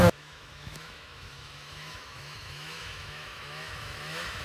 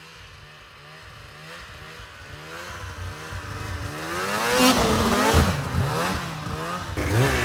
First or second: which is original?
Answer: second